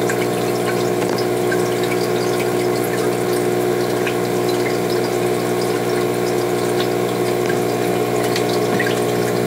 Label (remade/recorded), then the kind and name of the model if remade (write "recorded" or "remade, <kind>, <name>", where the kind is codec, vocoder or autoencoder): recorded